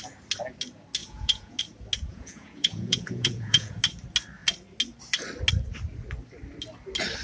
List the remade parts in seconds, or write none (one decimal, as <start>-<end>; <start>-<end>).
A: 1.0-1.6; 2.1-3.8